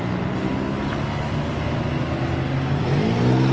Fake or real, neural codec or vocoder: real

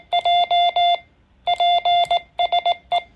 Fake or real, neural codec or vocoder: fake, vocoder, BigVGAN v2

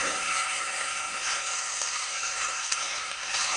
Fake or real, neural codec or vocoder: fake, codec, SNAC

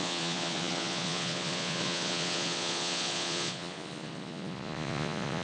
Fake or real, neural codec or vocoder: fake, vocoder, Vocos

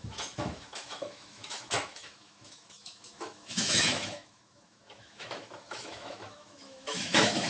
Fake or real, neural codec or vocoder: fake, autoencoder, DAC-VAE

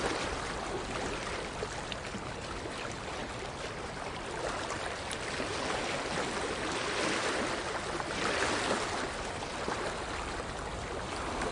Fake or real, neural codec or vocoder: real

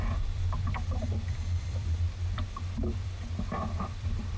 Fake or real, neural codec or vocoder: fake, vocoder, BigVGAN v2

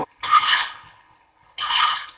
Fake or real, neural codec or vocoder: fake, codec, HILCodec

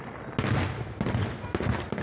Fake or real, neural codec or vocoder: real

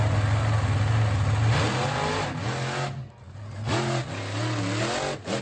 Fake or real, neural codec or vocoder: real